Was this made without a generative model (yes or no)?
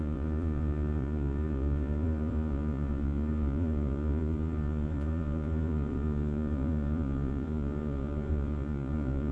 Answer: no